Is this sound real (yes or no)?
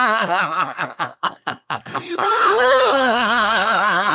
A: no